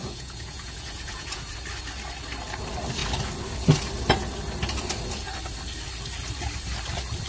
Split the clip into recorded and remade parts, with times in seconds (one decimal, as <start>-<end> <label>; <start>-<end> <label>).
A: 0.0-1.5 remade; 1.5-7.3 recorded